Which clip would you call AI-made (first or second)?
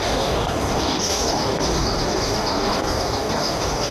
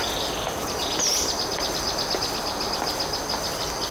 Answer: first